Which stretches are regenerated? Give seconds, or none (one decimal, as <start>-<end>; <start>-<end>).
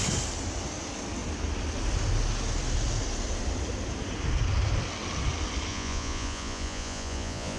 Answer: 5.7-7.6